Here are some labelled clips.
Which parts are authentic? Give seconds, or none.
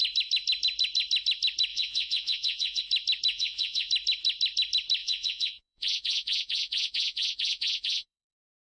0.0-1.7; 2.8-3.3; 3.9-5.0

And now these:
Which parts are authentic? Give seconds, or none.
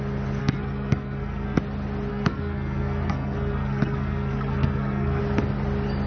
0.0-0.4; 1.6-2.1; 5.2-6.1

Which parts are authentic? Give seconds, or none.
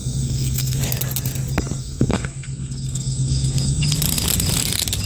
0.8-1.8; 3.8-5.1